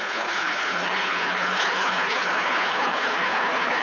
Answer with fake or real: fake